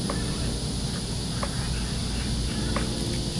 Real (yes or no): yes